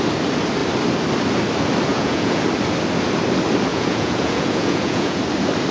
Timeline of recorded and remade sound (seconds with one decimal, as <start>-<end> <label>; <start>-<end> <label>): 0.0-1.9 recorded; 1.9-2.4 remade; 2.4-3.7 recorded; 3.7-5.2 remade; 5.2-5.7 recorded